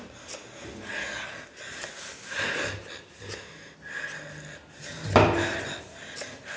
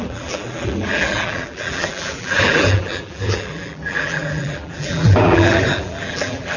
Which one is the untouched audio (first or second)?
first